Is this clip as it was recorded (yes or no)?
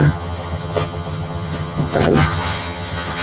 no